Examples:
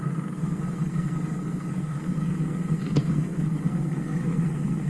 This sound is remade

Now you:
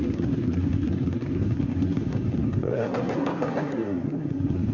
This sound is remade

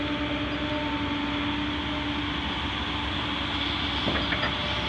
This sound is recorded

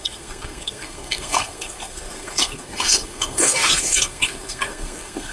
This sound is remade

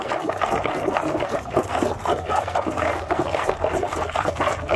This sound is remade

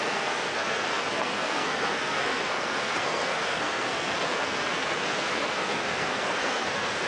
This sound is remade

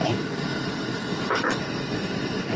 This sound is recorded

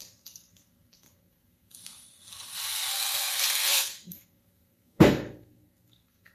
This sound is remade